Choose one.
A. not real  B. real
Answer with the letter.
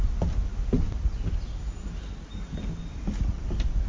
B